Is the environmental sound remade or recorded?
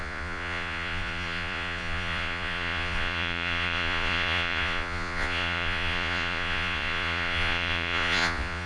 remade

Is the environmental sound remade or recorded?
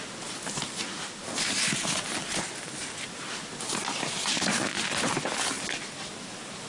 recorded